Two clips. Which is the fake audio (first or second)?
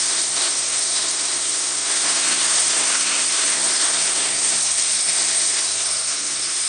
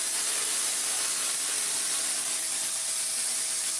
first